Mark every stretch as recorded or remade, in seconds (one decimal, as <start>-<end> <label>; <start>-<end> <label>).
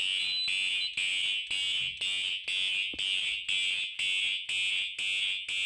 0.0-5.7 recorded